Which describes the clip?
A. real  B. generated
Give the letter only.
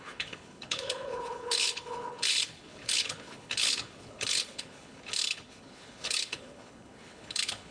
B